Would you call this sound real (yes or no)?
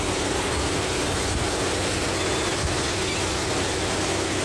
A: yes